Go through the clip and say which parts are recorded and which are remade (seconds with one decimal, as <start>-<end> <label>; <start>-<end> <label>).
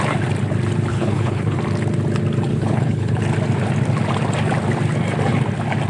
0.0-0.9 recorded; 0.9-1.6 remade; 1.6-2.5 recorded; 2.5-3.2 remade; 3.2-5.9 recorded